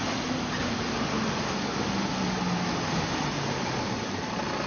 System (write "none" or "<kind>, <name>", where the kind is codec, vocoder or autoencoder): none